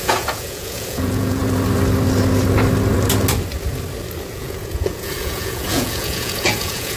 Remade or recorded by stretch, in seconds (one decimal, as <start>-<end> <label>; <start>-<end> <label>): 0.0-1.4 remade; 1.4-4.3 recorded; 4.3-7.0 remade